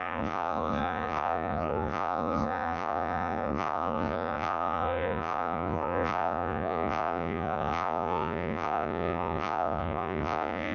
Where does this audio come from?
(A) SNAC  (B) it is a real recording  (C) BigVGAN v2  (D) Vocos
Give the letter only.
D